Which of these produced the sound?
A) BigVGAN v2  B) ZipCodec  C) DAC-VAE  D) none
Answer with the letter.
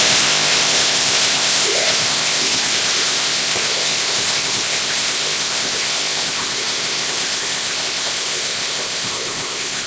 B